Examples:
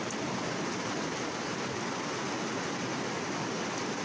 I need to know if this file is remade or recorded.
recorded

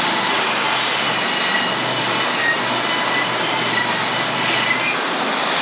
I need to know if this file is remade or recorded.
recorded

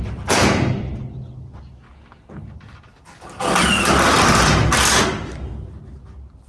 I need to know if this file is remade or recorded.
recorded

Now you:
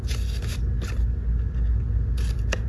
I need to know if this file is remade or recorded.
recorded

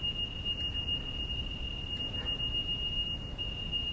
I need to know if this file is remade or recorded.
recorded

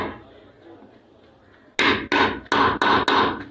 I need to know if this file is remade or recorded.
recorded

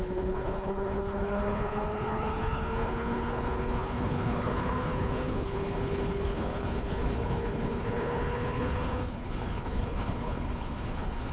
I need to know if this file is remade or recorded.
remade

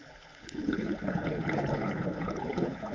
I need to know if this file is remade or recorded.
remade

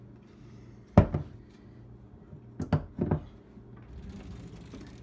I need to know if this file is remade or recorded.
recorded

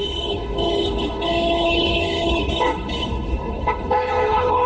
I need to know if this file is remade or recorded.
remade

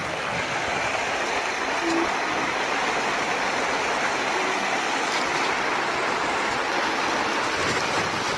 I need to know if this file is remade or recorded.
recorded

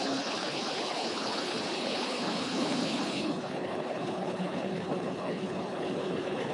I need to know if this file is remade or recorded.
remade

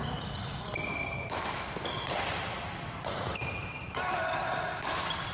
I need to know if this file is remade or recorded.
recorded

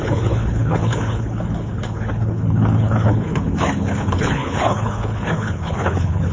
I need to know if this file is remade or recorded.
remade